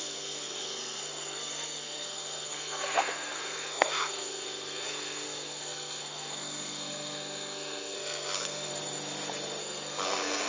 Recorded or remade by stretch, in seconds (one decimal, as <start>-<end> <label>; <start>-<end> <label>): 0.0-8.7 remade; 8.7-9.6 recorded; 9.6-10.5 remade